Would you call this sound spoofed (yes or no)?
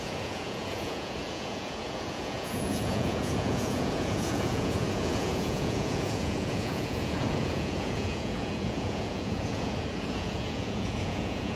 yes